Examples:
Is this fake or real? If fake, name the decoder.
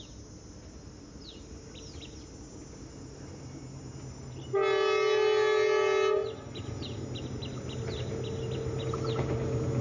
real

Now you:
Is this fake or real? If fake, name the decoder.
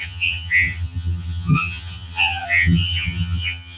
fake, vocoder, HiFi-GAN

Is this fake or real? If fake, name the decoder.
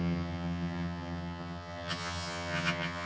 fake, vocoder, HiFi-GAN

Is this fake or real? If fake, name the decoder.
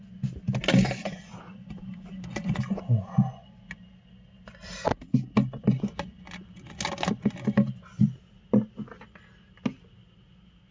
real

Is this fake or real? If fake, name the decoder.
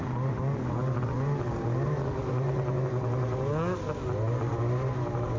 real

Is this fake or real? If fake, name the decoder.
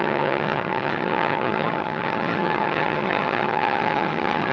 fake, vocoder, HiFi-GAN